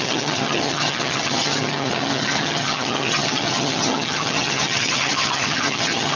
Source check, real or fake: fake